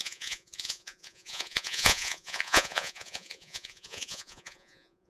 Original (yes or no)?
no